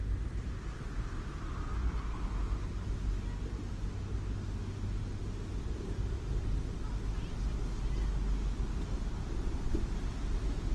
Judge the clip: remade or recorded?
recorded